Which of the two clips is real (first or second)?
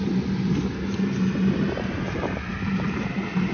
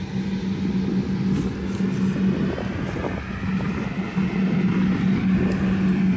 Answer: second